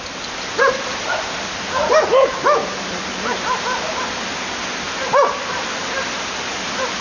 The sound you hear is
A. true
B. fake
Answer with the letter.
A